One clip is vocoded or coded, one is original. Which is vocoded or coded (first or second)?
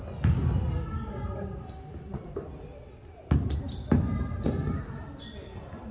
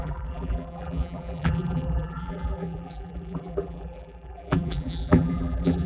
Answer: second